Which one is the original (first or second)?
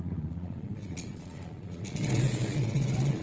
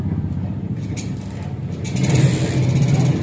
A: second